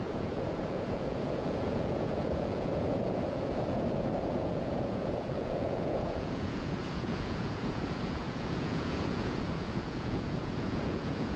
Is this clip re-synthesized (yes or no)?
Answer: yes